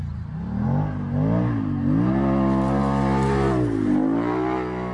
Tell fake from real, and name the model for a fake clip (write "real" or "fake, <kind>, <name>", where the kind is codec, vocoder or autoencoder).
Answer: real